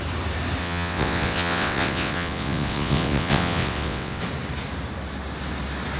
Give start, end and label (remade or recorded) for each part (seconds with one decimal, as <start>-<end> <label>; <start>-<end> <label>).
0.0-0.6 recorded; 0.6-4.2 remade; 4.2-6.0 recorded